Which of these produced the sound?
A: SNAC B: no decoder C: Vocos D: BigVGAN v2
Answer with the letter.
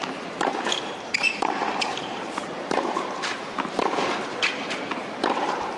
D